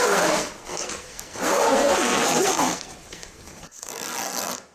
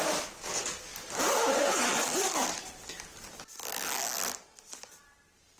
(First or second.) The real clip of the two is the second